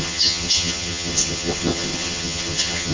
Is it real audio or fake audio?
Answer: fake